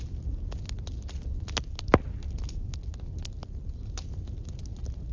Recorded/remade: recorded